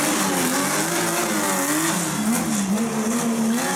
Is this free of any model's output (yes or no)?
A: yes